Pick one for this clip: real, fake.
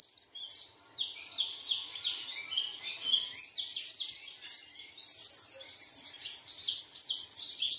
real